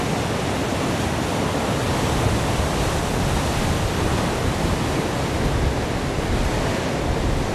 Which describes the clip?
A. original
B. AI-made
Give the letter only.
A